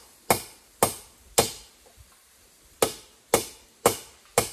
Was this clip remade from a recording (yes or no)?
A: no